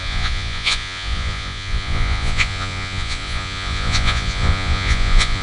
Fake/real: fake